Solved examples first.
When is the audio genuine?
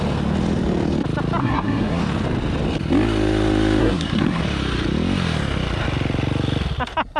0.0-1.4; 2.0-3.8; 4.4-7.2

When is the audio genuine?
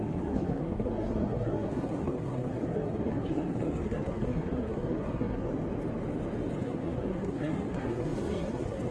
5.5-6.6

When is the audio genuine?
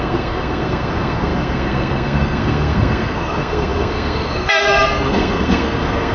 none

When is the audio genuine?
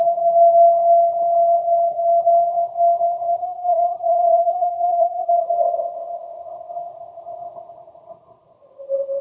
0.0-3.4; 5.3-9.2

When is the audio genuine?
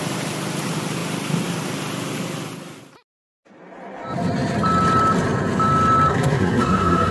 0.0-6.1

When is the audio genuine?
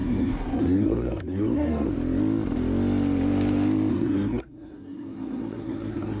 1.9-3.9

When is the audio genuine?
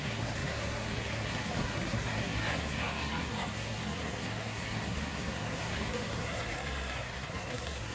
none